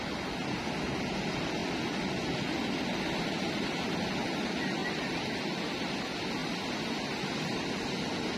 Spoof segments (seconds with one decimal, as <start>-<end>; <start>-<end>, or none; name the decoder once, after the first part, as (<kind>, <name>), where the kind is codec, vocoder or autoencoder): 4.8-6.0 (vocoder, BigVGAN v2); 6.4-7.7